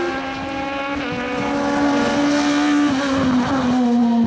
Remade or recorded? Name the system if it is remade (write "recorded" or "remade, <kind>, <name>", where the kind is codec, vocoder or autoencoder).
recorded